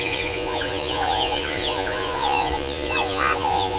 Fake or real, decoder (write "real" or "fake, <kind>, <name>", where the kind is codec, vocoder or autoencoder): fake, vocoder, Vocos